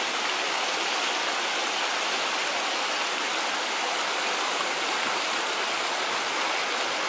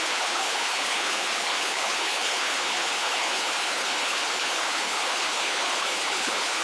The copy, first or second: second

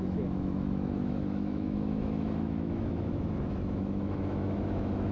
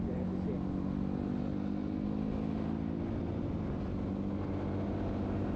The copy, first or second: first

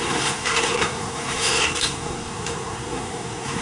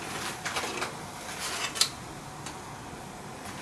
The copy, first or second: first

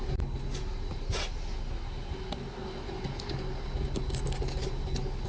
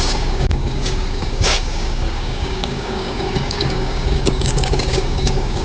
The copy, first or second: second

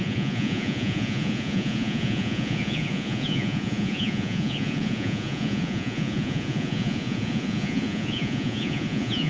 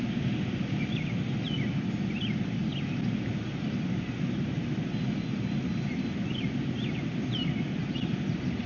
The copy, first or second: first